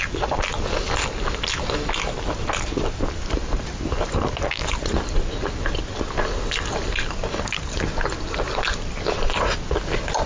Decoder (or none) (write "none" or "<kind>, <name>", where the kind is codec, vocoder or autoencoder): none